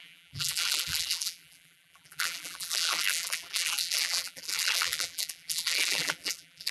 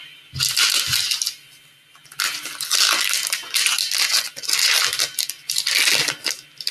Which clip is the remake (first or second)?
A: first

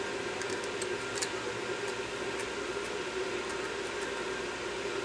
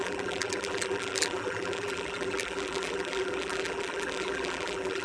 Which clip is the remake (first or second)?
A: second